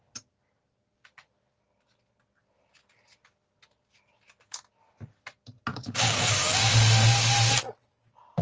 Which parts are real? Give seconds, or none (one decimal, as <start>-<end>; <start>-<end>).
0.0-5.7; 6.7-8.4